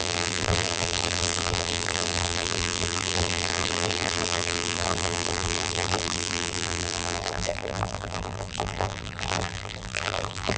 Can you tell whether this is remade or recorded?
remade